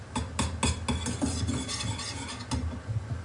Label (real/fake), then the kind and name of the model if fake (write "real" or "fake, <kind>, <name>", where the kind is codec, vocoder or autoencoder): real